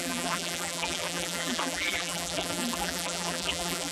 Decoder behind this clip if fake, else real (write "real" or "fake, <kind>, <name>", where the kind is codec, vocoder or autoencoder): fake, vocoder, BigVGAN v2